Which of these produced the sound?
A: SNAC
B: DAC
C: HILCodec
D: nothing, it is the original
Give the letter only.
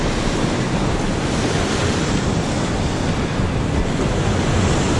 D